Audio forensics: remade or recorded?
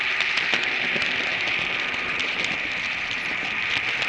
recorded